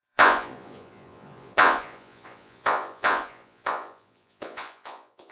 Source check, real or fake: fake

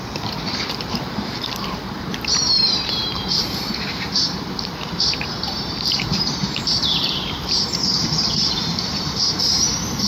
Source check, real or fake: fake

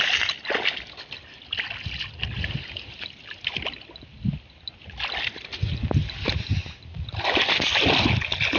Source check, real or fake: real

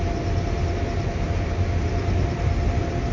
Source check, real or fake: real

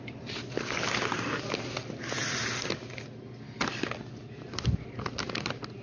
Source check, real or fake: real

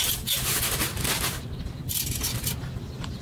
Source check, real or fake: real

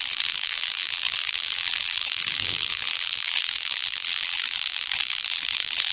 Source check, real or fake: fake